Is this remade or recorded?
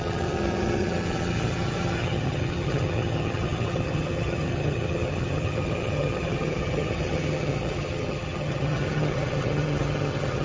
remade